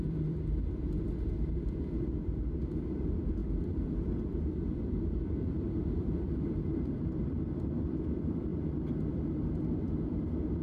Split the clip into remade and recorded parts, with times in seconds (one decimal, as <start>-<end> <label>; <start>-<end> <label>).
0.0-10.6 remade